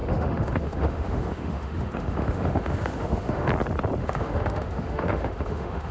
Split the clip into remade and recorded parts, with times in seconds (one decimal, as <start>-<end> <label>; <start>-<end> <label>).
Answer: 0.0-3.5 remade; 3.5-4.0 recorded; 4.0-5.9 remade